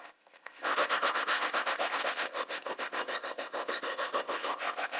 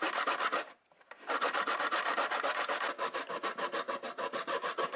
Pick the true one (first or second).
second